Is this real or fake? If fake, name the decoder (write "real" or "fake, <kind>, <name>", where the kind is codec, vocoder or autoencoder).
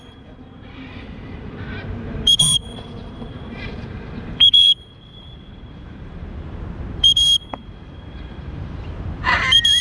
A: fake, vocoder, BigVGAN v2